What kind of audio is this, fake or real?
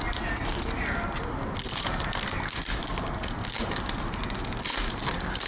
real